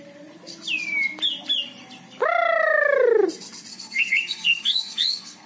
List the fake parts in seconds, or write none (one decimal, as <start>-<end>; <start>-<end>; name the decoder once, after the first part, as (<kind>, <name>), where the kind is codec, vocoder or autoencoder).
3.7-5.5 (codec, SNAC)